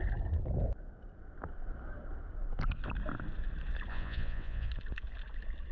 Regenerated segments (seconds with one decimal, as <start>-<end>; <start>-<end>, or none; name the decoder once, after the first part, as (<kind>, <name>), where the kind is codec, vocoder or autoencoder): 3.9-4.7 (vocoder, Vocos)